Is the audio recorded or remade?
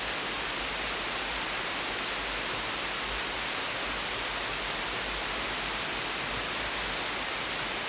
recorded